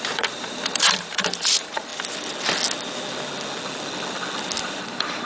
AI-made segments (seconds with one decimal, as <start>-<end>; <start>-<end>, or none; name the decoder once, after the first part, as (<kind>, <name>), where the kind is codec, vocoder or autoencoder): 0.0-1.9 (vocoder, BigVGAN v2); 4.6-5.3